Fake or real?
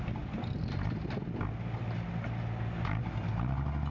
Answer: real